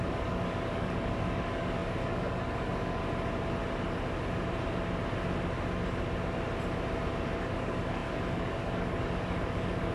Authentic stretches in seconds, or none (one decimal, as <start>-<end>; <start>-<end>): 3.0-7.4